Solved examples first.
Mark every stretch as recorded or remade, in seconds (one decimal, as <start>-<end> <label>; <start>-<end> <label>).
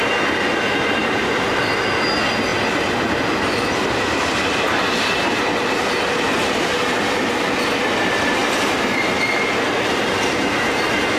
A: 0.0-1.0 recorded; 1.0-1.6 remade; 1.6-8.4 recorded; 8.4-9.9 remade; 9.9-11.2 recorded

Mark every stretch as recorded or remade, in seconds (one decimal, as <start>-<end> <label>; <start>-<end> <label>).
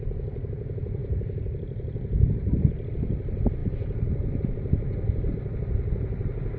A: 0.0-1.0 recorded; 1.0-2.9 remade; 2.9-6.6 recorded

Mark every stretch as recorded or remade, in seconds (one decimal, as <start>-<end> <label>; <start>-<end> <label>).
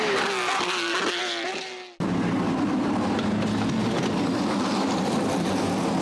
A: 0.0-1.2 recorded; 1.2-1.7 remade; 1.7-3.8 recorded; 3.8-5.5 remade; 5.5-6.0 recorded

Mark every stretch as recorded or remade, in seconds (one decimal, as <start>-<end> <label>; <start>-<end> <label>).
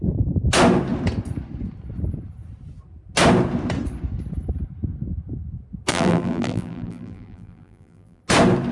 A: 0.0-5.9 recorded; 5.9-8.2 remade; 8.2-8.7 recorded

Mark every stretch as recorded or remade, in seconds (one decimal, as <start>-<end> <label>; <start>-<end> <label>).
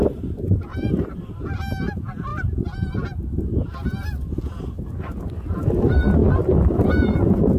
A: 0.0-0.7 recorded; 0.7-1.3 remade; 1.3-7.6 recorded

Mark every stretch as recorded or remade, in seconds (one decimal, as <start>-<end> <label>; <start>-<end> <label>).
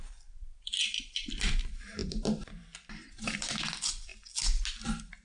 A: 0.0-4.1 remade; 4.1-4.7 recorded; 4.7-5.2 remade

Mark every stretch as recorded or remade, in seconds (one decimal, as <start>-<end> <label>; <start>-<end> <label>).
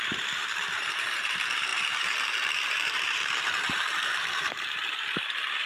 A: 0.0-5.7 remade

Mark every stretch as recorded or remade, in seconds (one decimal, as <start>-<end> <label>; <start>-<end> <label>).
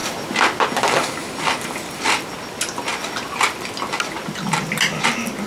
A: 0.0-5.5 recorded